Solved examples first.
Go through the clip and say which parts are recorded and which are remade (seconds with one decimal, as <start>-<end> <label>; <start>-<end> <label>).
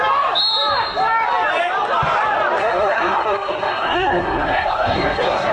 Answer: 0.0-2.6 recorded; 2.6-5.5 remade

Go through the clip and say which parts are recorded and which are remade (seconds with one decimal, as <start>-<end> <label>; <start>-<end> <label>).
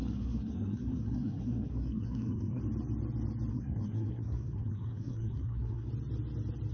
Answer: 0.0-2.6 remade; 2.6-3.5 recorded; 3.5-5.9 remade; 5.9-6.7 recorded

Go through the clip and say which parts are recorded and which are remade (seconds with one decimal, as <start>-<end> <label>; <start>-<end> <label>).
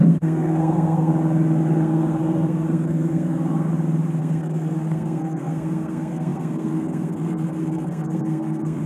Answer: 0.0-1.1 remade; 1.1-1.8 recorded; 1.8-3.7 remade; 3.7-4.2 recorded; 4.2-8.9 remade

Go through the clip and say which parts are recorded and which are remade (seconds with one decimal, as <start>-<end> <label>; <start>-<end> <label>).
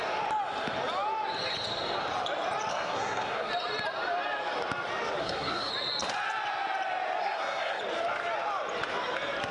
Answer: 0.0-2.7 recorded; 2.7-3.5 remade; 3.5-5.2 recorded; 5.2-5.7 remade; 5.7-7.2 recorded; 7.2-7.8 remade; 7.8-9.5 recorded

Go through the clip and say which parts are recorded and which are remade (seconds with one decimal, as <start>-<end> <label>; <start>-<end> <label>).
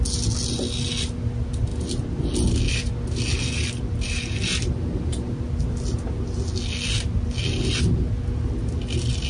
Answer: 0.0-9.3 recorded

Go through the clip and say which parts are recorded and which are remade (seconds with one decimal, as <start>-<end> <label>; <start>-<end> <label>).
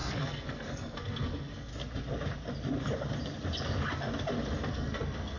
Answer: 0.0-1.7 remade; 1.7-4.7 recorded; 4.7-5.4 remade